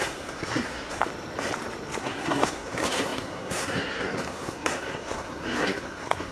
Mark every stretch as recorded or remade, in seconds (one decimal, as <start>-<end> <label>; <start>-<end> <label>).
0.0-1.1 remade; 1.1-2.0 recorded; 2.0-6.3 remade